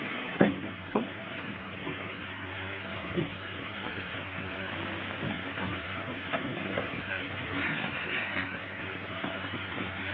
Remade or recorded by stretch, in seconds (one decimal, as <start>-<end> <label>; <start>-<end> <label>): 0.0-4.7 remade; 4.7-5.3 recorded; 5.3-10.1 remade